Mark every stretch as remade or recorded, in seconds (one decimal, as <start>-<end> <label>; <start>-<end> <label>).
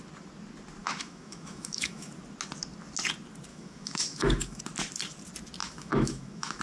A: 0.0-0.8 recorded; 0.8-2.1 remade; 2.1-3.5 recorded; 3.5-4.6 remade; 4.6-5.6 recorded; 5.6-6.6 remade